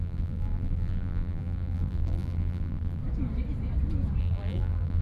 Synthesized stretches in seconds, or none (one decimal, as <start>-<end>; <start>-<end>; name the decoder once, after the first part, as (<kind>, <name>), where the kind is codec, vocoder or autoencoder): 0.0-3.0 (vocoder, BigVGAN v2); 4.2-5.0